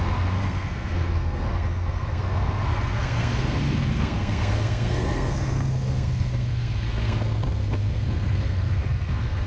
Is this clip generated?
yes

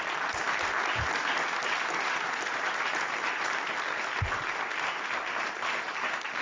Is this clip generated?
no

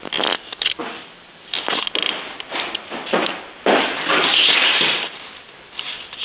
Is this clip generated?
no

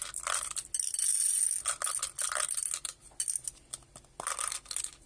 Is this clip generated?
no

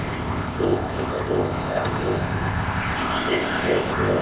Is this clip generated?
yes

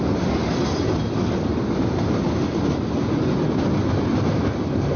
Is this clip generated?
no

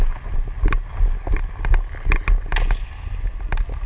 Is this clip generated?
no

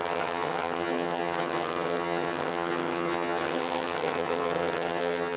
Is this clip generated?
yes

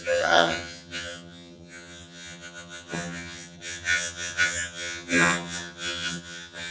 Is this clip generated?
yes